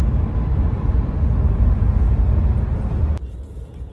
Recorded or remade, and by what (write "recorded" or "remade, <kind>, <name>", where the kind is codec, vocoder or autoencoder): recorded